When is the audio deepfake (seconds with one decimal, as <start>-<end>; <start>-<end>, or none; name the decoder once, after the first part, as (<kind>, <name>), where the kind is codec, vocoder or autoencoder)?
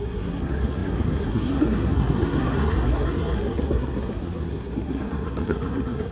0.0-6.1 (codec, SNAC)